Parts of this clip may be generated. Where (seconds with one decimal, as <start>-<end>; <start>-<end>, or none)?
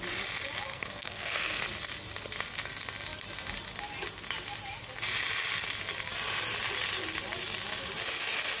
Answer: 0.7-1.6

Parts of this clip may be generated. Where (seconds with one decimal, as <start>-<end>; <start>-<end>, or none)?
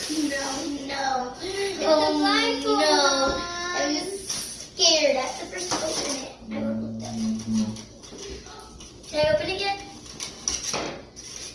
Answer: 1.2-2.0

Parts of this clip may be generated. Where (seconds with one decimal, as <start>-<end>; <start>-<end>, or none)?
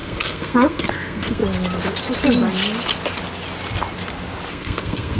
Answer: 0.0-1.4; 4.5-5.2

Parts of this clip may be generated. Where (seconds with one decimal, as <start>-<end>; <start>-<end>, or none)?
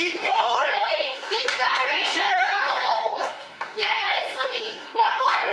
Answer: 0.0-5.5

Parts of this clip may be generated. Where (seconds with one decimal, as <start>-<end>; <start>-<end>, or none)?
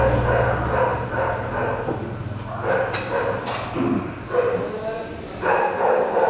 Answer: none